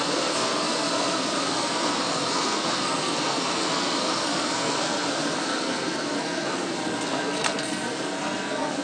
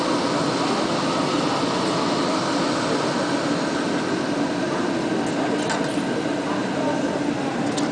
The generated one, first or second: first